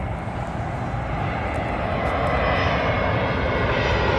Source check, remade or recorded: recorded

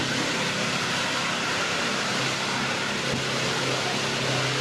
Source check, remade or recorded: recorded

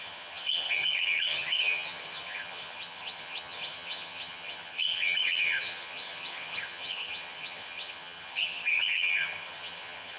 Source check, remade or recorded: remade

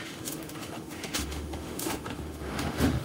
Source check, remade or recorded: remade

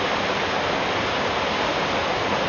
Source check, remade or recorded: recorded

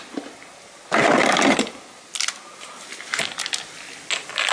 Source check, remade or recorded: recorded